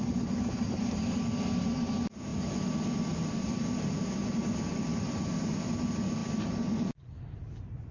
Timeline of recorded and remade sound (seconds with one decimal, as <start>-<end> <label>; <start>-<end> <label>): 0.0-4.7 recorded; 4.7-5.3 remade; 5.3-7.9 recorded